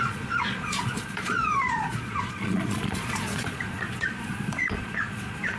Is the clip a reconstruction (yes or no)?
yes